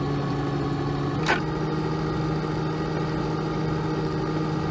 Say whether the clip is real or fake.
real